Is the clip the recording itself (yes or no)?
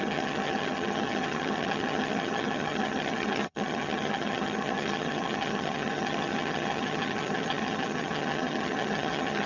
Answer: no